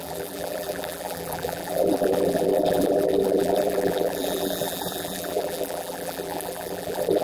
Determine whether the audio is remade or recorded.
remade